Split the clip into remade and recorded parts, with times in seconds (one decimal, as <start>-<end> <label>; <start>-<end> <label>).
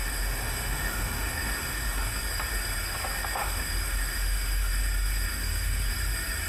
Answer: 0.0-2.1 remade; 2.1-3.4 recorded; 3.4-4.7 remade; 4.7-5.3 recorded; 5.3-5.9 remade; 5.9-6.5 recorded